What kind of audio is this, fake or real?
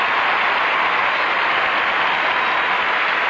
real